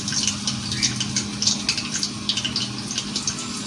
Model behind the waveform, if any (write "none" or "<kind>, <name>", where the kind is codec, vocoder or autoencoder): none